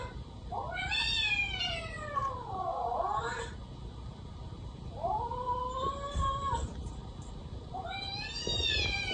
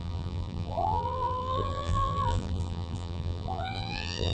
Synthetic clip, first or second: second